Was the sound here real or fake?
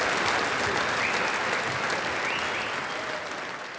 real